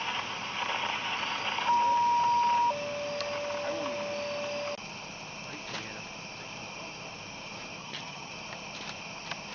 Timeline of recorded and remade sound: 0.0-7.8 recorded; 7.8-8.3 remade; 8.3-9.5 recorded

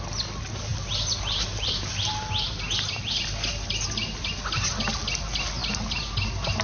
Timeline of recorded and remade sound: 0.0-6.6 recorded

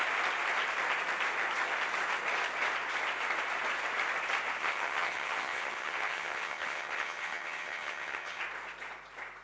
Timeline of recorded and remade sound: 0.0-4.6 recorded; 4.6-8.4 remade; 8.4-9.4 recorded

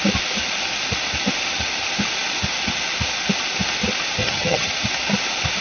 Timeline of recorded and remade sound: 0.0-4.2 recorded; 4.2-4.7 remade; 4.7-5.6 recorded